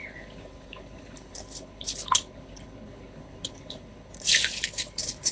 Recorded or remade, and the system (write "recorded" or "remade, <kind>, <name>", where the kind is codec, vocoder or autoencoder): remade, codec, HILCodec